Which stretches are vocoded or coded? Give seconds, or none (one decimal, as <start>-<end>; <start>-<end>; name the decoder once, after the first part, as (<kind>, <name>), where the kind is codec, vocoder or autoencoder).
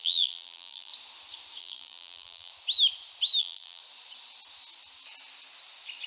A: 0.0-0.9 (vocoder, BigVGAN v2); 1.6-2.5; 3.4-3.8